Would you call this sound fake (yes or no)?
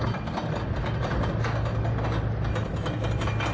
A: no